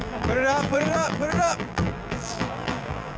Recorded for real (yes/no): no